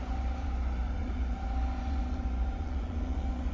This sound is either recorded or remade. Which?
remade